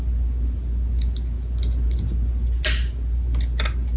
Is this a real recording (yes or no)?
yes